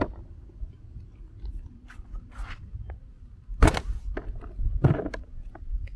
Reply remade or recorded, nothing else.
recorded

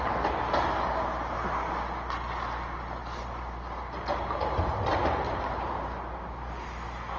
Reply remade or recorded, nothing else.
recorded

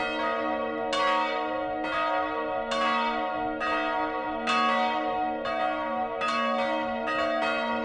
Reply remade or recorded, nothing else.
recorded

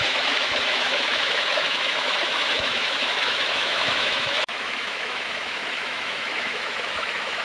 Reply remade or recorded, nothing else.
remade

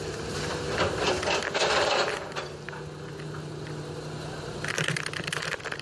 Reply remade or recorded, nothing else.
recorded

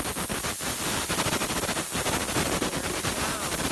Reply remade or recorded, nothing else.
recorded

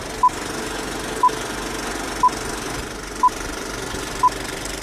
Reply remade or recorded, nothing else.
recorded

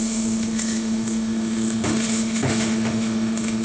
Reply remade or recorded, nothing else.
remade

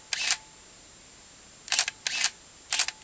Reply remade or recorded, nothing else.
recorded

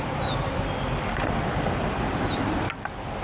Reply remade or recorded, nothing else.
recorded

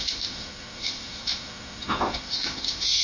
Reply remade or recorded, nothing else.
remade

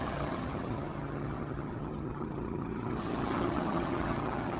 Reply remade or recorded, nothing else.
remade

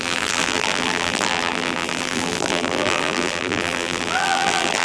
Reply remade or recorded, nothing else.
remade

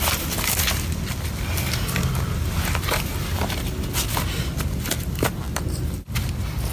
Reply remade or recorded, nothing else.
recorded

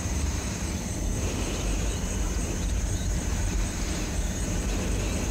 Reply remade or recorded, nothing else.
remade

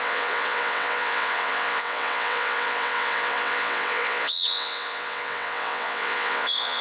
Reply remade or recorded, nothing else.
remade